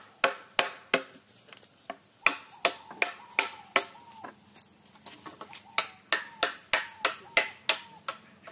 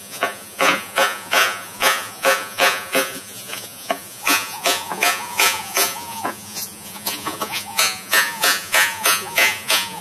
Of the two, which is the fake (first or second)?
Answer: second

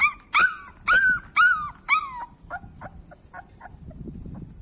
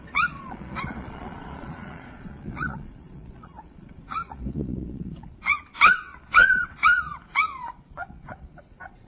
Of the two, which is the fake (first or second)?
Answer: second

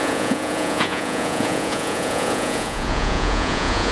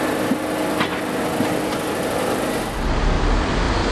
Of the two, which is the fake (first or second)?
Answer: first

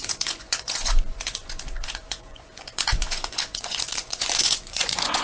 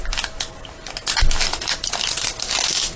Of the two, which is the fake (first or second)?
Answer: first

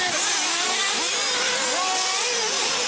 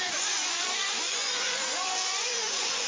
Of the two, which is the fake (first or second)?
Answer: second